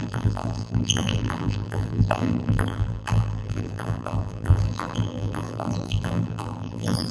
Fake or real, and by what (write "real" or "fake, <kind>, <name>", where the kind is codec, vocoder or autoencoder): fake, vocoder, BigVGAN v2